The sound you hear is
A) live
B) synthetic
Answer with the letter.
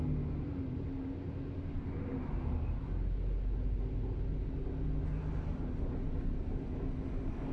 A